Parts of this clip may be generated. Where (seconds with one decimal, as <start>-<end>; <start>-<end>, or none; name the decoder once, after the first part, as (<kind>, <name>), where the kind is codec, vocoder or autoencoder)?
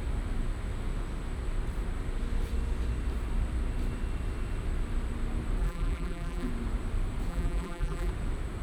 5.6-6.5 (vocoder, BigVGAN v2); 7.3-8.1